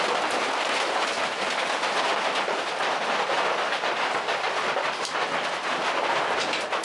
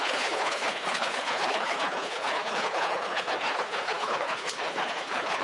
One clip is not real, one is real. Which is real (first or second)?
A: first